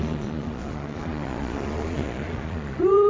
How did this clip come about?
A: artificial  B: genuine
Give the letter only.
A